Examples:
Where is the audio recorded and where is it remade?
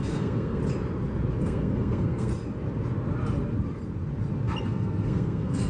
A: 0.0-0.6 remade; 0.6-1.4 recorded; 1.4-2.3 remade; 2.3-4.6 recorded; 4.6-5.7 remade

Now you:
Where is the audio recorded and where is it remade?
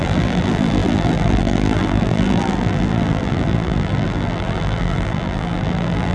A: 0.0-6.1 remade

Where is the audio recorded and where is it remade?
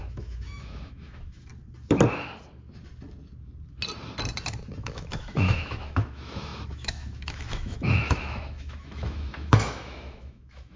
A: 0.0-1.5 remade; 1.5-4.8 recorded; 4.8-10.8 remade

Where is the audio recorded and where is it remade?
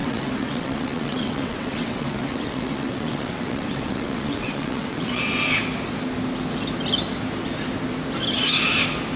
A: 0.0-5.2 remade; 5.2-9.2 recorded